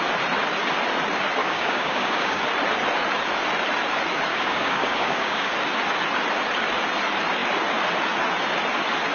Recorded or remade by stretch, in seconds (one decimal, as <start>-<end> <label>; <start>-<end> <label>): 0.0-1.4 recorded; 1.4-2.4 remade; 2.4-4.3 recorded; 4.3-5.5 remade; 5.5-9.1 recorded